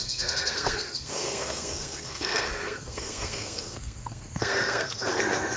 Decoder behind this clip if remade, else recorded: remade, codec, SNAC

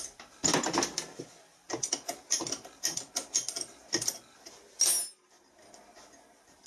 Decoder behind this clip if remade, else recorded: recorded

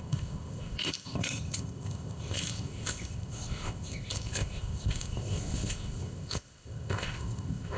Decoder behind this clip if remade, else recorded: remade, codec, ZipCodec